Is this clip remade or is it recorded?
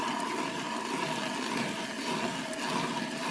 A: recorded